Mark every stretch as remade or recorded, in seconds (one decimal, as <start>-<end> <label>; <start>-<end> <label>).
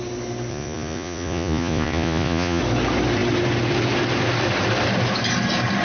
0.0-0.5 recorded; 0.5-2.6 remade; 2.6-5.8 recorded